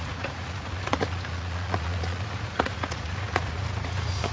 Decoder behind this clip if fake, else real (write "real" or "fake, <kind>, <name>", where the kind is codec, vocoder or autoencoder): fake, vocoder, Vocos